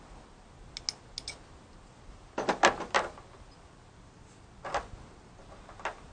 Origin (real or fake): real